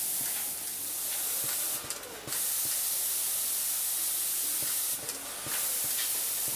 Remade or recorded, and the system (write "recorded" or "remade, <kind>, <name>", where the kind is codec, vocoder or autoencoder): recorded